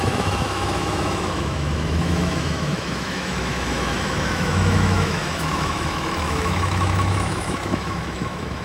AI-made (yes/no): yes